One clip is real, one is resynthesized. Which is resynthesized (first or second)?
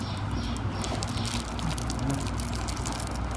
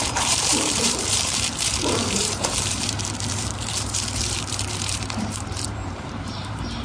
second